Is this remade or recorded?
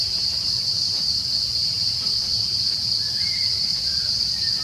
remade